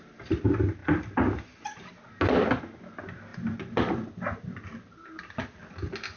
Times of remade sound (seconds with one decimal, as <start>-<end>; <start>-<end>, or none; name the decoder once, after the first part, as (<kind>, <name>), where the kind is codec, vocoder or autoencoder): none